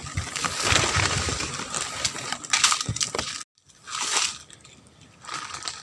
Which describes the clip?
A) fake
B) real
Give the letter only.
B